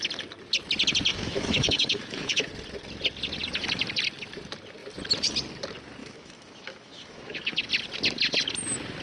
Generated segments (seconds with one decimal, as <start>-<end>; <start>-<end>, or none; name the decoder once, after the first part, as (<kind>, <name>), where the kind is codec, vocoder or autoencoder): 1.1-2.5 (autoencoder, DAC-VAE); 6.0-7.6